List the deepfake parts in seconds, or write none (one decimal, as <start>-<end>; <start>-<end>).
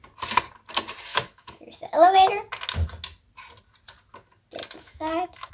1.1-2.1; 4.6-5.5